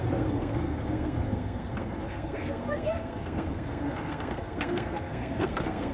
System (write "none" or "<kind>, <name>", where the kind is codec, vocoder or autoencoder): codec, SNAC